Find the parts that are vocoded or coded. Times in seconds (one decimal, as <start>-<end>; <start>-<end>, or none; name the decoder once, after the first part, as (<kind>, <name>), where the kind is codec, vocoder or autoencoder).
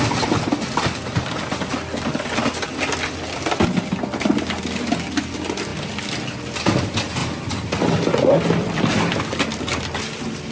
none